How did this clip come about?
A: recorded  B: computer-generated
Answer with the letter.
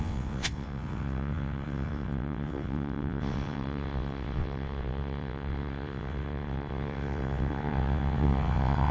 B